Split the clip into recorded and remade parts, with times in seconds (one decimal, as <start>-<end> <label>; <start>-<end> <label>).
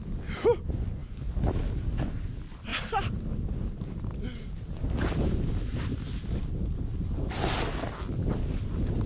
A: 0.0-9.1 recorded